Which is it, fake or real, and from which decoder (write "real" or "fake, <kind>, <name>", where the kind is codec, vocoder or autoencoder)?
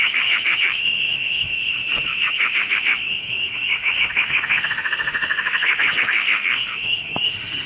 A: fake, autoencoder, DAC-VAE